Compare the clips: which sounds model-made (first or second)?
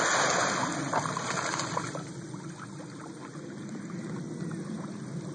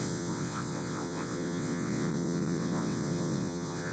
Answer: second